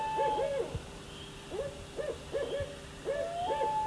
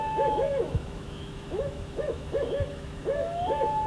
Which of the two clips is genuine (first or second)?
first